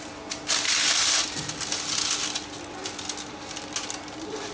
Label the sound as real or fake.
real